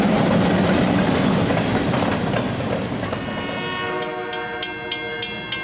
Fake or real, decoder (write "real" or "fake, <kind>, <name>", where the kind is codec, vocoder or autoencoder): real